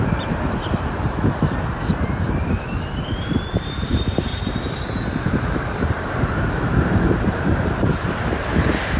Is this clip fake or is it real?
fake